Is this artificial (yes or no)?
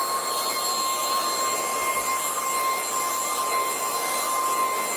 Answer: no